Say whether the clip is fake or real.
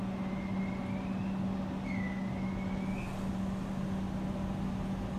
real